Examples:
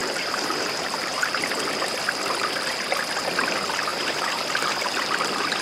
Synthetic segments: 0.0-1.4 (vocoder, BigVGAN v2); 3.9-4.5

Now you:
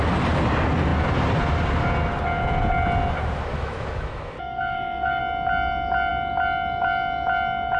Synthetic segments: 3.5-5.2 (autoencoder, DAC-VAE)

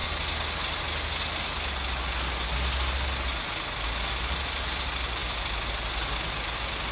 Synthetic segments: none

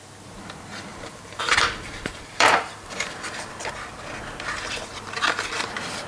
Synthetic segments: 0.9-3.5 (vocoder, BigVGAN v2)

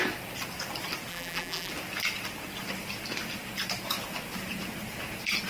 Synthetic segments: 1.1-1.7 (vocoder, BigVGAN v2)

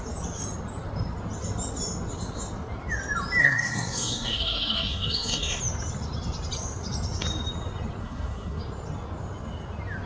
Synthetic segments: 3.4-5.6 (codec, SNAC); 8.0-8.6

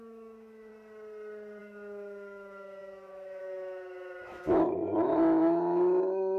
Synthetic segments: 0.0-0.7 (autoencoder, DAC-VAE); 1.6-6.4

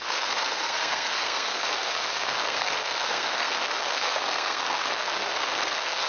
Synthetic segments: 0.0-6.1 (codec, SNAC)